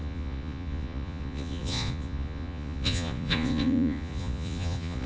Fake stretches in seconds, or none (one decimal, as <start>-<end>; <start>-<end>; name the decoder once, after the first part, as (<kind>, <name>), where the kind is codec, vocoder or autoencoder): 0.0-5.1 (vocoder, Vocos)